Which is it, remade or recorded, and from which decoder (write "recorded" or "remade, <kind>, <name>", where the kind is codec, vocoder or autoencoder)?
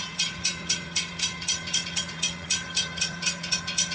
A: remade, vocoder, Vocos